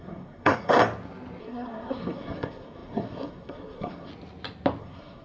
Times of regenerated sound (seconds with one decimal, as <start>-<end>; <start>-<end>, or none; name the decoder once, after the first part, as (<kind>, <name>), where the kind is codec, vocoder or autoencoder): 0.0-0.8 (codec, SNAC); 1.4-4.1; 4.8-5.2